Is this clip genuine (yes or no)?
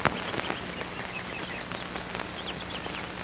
yes